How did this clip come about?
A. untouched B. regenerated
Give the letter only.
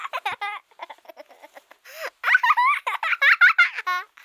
A